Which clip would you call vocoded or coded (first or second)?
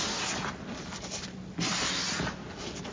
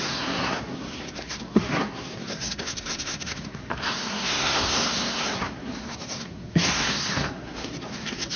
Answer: second